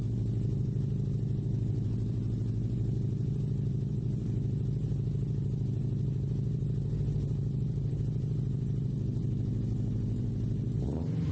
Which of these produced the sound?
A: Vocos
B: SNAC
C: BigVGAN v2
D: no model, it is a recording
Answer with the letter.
C